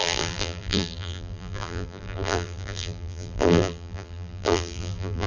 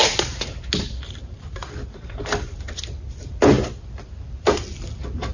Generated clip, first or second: first